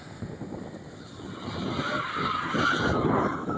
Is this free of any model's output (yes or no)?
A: yes